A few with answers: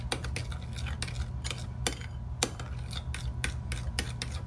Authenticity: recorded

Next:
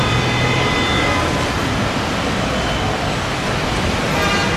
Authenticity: recorded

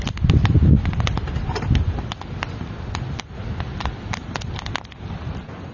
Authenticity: recorded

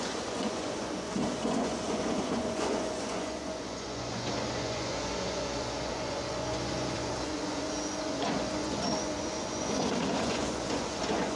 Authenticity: remade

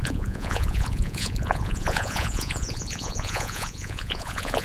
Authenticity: remade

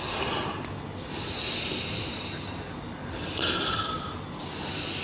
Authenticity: recorded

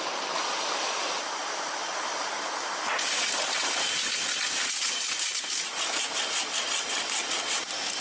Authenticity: recorded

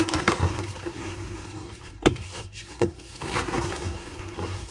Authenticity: remade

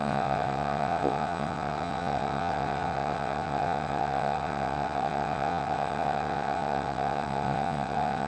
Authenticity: remade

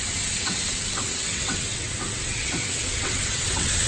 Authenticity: remade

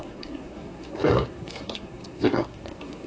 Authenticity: remade